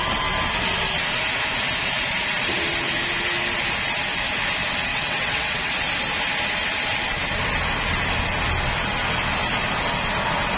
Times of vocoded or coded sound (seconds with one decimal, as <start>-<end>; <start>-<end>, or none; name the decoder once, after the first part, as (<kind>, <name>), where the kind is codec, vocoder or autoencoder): 4.9-5.7 (vocoder, WaveNeXt)